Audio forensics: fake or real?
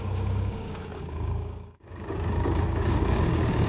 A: fake